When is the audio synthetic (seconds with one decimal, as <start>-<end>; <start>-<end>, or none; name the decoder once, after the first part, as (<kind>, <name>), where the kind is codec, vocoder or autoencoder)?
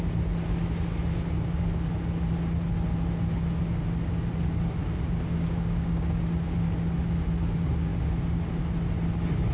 4.8-6.2 (codec, DAC)